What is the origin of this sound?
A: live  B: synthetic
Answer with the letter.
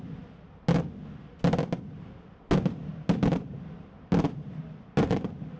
A